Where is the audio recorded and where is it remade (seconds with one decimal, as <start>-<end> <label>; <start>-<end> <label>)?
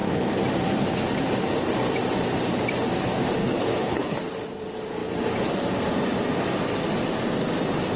0.0-3.4 recorded; 3.4-4.2 remade; 4.2-8.0 recorded